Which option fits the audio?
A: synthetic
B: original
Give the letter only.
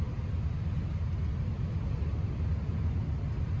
B